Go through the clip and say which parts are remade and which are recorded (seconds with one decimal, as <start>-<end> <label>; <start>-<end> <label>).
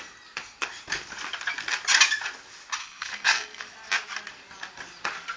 0.0-2.8 recorded; 2.8-3.6 remade; 3.6-5.4 recorded